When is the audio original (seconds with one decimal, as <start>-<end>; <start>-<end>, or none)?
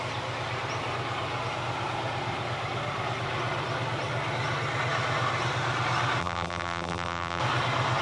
0.0-6.2; 7.4-8.0